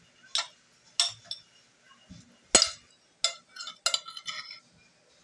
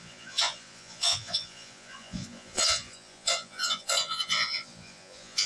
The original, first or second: first